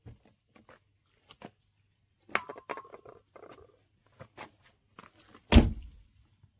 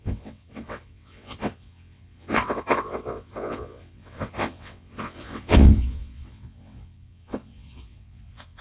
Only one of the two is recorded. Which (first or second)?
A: first